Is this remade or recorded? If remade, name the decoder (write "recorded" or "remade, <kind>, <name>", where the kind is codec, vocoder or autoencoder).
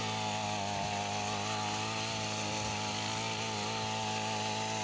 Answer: recorded